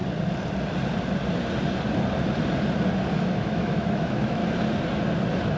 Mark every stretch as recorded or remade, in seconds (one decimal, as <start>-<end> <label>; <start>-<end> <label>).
0.0-3.2 recorded; 3.2-4.4 remade; 4.4-5.6 recorded

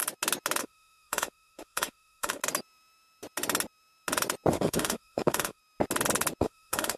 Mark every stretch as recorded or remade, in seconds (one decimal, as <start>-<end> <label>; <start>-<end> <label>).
0.0-0.6 recorded; 0.6-2.4 remade; 2.4-4.5 recorded; 4.5-5.6 remade; 5.6-6.4 recorded; 6.4-7.0 remade

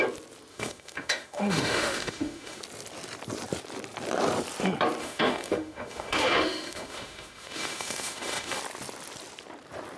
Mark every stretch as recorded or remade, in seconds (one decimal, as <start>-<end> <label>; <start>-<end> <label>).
0.0-0.5 recorded; 0.5-2.6 remade; 2.6-5.0 recorded; 5.0-8.6 remade; 8.6-10.0 recorded

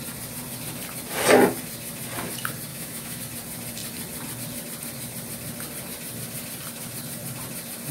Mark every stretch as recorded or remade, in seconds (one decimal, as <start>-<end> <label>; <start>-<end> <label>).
0.0-2.7 recorded; 2.7-3.2 remade; 3.2-7.9 recorded

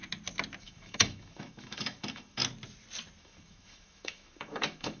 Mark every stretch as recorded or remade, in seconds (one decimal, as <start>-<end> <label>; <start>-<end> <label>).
0.0-0.6 recorded; 0.6-2.4 remade; 2.4-3.2 recorded; 3.2-5.0 remade

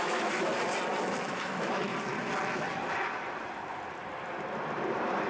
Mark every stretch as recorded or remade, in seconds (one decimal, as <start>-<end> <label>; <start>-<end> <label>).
0.0-0.5 remade; 0.5-1.0 recorded; 1.0-1.9 remade; 1.9-5.3 recorded

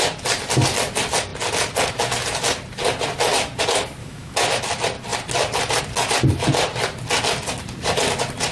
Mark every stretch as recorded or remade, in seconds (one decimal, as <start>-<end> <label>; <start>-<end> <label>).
0.0-4.0 recorded; 4.0-4.6 remade; 4.6-8.5 recorded

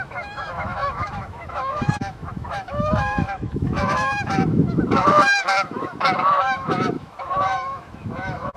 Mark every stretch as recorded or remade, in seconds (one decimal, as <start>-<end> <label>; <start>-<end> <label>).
0.0-8.6 remade